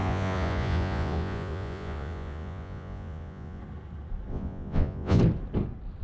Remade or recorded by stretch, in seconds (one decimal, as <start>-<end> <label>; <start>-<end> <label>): 0.0-3.6 remade; 3.6-4.3 recorded; 4.3-5.2 remade; 5.2-6.0 recorded